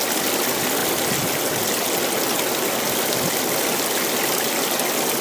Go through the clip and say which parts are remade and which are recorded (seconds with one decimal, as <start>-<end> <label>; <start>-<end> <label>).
0.0-5.2 recorded